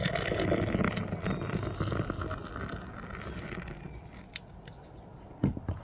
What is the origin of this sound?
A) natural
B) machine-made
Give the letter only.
A